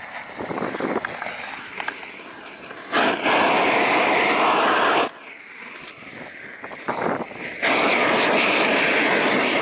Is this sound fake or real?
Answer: real